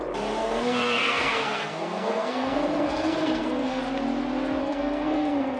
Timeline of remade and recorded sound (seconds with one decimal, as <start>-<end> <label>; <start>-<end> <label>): 0.0-0.4 recorded; 0.4-3.8 remade; 3.8-4.6 recorded; 4.6-5.6 remade